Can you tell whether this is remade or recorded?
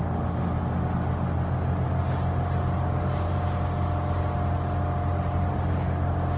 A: recorded